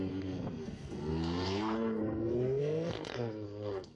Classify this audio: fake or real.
fake